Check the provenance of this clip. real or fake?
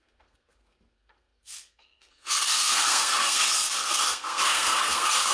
fake